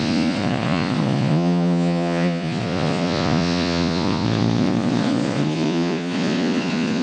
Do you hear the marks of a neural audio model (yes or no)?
yes